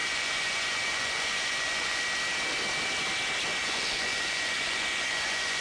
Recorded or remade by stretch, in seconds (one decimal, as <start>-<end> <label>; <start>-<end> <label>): 0.0-2.0 remade; 2.0-3.6 recorded; 3.6-5.6 remade